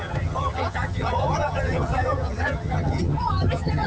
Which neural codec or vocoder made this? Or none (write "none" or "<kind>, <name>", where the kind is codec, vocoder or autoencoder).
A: vocoder, HiFi-GAN